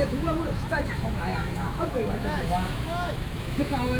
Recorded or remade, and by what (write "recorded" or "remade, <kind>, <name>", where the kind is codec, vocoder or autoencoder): remade, autoencoder, DAC-VAE